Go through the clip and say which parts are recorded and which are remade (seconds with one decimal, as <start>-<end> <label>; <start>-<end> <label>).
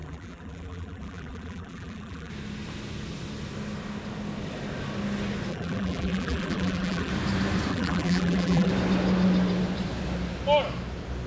0.0-2.3 remade; 2.3-5.5 recorded; 5.5-7.1 remade; 7.1-7.7 recorded; 7.7-8.7 remade; 8.7-11.3 recorded